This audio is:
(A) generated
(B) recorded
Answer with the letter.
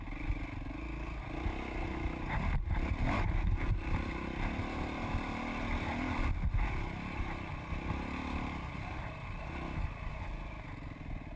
B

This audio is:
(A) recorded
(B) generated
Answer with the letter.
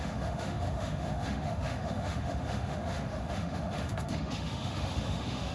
B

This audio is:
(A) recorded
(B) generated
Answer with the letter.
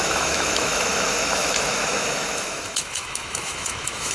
B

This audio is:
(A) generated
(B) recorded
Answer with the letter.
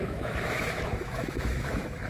A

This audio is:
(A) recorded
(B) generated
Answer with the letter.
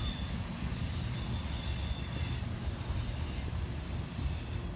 A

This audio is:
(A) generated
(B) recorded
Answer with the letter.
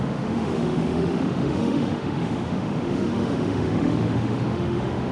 A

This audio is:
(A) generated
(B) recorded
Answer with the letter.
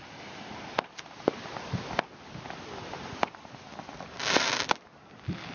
B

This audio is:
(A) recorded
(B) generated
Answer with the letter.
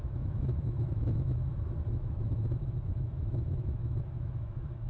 B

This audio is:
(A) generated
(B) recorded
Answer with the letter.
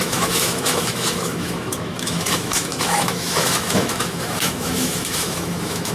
A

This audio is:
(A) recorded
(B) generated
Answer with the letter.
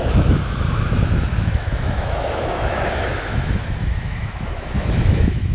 B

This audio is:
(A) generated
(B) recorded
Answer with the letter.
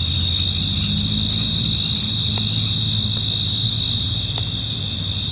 B